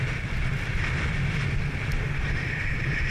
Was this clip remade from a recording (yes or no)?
no